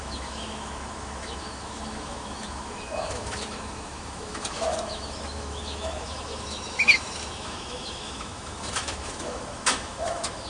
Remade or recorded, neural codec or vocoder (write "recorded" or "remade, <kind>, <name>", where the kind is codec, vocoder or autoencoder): remade, autoencoder, DAC-VAE